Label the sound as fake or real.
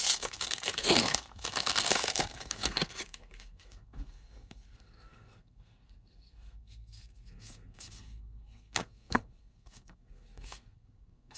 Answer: fake